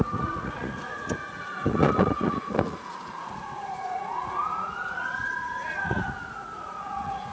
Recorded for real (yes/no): no